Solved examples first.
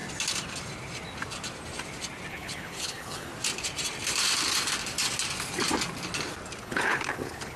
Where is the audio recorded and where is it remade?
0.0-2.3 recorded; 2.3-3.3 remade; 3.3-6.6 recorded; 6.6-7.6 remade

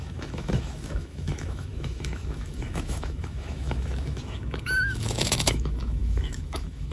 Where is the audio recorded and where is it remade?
0.0-6.9 remade

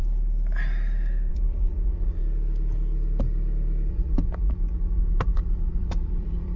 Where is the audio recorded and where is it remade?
0.0-1.3 recorded; 1.3-2.2 remade; 2.2-3.9 recorded; 3.9-6.6 remade

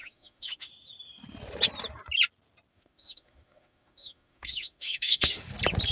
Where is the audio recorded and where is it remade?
0.0-0.7 remade; 0.7-2.7 recorded; 2.7-5.5 remade; 5.5-5.9 recorded

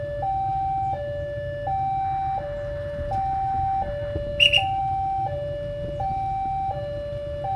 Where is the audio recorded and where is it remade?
0.0-7.6 recorded

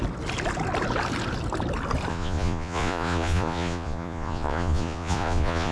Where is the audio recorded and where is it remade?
0.0-2.1 recorded; 2.1-5.7 remade

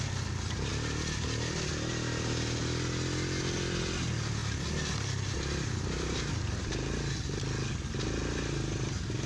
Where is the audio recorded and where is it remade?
0.0-4.4 recorded; 4.4-7.4 remade; 7.4-8.2 recorded; 8.2-9.3 remade

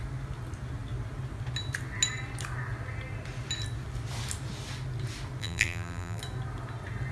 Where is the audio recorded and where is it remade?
0.0-5.4 recorded; 5.4-6.2 remade; 6.2-7.1 recorded